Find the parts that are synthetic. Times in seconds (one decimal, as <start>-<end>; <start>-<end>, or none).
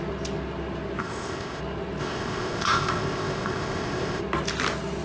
1.0-1.6; 2.0-4.2